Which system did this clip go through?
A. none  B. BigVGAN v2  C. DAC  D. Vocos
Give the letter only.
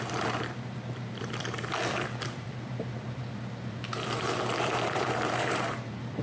B